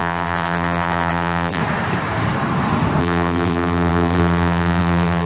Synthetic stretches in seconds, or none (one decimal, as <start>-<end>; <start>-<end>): 0.0-1.6; 3.0-5.2